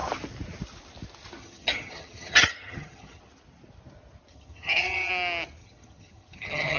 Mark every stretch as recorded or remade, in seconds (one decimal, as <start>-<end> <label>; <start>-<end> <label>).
0.0-1.4 recorded; 1.4-3.2 remade; 3.2-4.3 recorded; 4.3-5.1 remade; 5.1-5.6 recorded; 5.6-6.8 remade